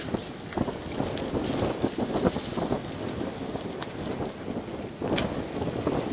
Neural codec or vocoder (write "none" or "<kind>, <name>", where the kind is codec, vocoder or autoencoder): none